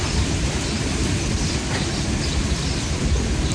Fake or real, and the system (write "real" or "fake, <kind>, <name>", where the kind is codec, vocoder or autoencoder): real